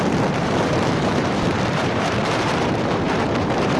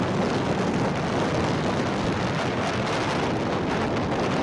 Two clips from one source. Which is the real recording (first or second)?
second